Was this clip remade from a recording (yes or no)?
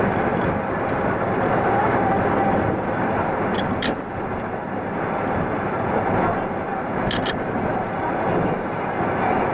yes